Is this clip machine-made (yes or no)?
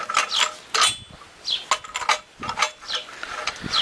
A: no